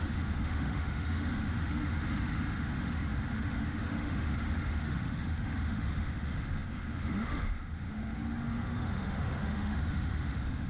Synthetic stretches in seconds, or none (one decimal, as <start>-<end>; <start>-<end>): 0.0-10.7